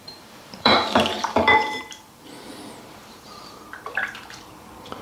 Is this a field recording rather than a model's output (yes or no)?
no